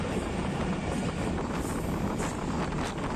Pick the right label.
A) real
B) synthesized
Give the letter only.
A